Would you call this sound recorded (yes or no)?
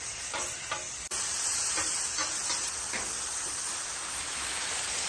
no